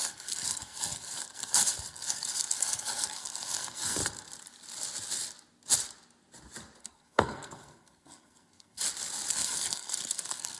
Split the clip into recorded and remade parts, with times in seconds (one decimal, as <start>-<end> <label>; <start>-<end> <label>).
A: 0.0-4.0 remade; 4.0-6.8 recorded; 6.8-8.8 remade; 8.8-9.3 recorded; 9.3-10.6 remade